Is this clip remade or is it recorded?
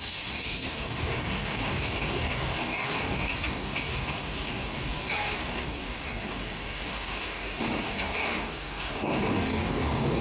remade